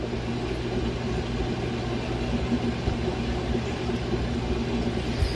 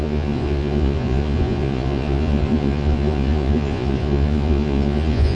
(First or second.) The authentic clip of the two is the first